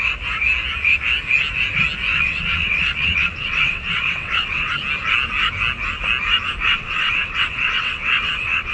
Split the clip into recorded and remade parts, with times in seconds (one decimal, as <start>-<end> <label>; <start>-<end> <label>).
0.0-2.1 recorded; 2.1-4.7 remade; 4.7-6.6 recorded; 6.6-8.7 remade